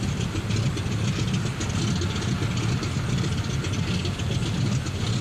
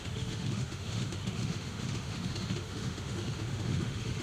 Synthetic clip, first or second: second